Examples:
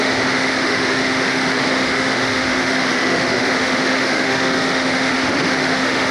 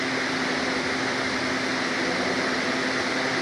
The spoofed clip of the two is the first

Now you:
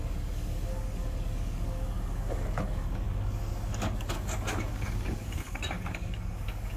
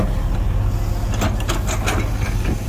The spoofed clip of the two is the first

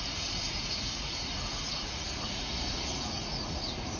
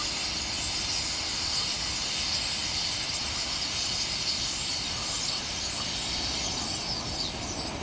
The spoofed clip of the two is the first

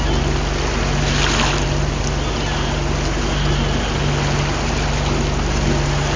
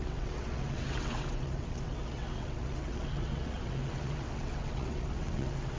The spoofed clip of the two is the second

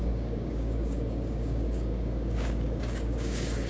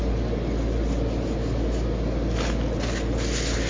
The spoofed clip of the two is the first